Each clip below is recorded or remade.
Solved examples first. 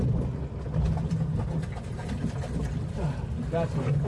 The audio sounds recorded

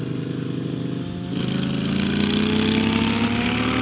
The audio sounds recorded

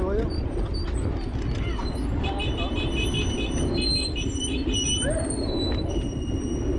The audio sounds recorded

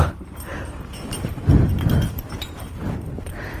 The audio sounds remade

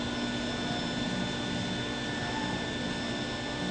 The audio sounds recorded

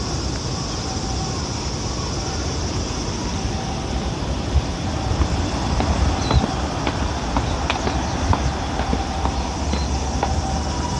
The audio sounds recorded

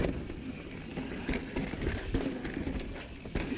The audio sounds recorded